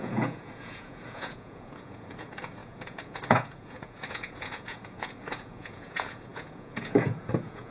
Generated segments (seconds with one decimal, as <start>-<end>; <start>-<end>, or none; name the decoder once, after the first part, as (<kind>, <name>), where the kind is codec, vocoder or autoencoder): 0.0-7.7 (vocoder, Vocos)